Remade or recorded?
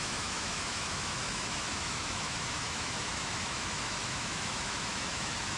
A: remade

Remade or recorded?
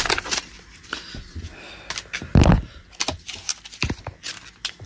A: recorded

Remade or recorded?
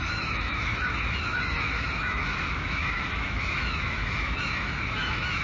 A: remade